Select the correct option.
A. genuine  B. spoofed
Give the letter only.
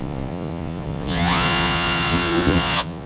B